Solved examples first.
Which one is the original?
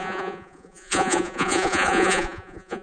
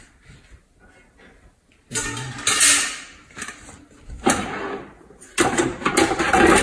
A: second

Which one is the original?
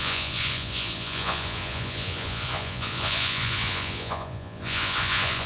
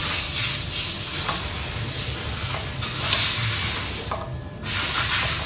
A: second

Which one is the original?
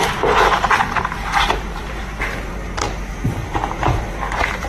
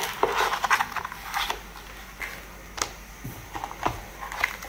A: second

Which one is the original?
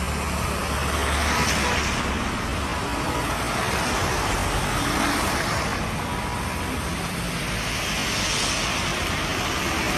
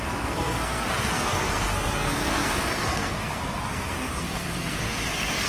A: first